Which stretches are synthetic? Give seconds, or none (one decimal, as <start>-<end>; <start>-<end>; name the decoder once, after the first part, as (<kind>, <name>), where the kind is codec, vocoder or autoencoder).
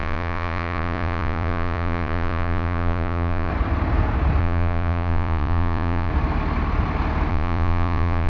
0.0-3.5 (vocoder, Vocos); 4.4-6.1; 7.3-8.3